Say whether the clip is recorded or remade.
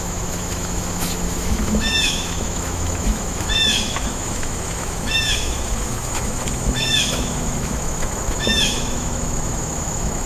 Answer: remade